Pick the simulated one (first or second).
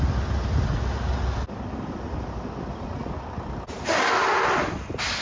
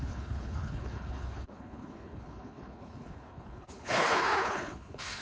second